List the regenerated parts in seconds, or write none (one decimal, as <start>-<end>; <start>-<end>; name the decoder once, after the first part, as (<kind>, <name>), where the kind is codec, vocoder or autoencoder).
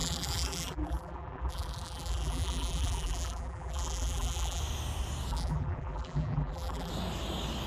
0.0-4.6 (vocoder, BigVGAN v2); 5.3-6.9